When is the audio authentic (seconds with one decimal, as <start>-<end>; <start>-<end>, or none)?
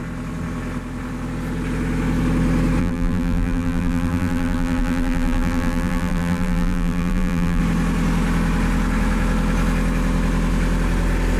0.0-2.8; 7.6-11.4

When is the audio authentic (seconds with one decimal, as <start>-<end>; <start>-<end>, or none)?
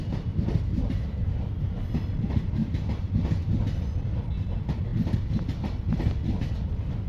0.0-7.1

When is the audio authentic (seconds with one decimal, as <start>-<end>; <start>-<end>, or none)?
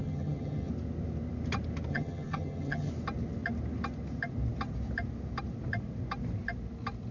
0.7-1.9; 2.9-7.1